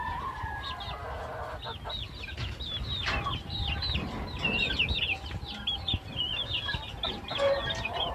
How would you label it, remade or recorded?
recorded